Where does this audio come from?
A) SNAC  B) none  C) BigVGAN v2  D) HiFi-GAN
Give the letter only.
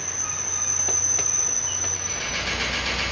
B